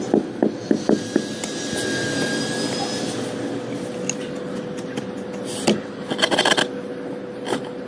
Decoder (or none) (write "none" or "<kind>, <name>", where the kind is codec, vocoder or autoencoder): none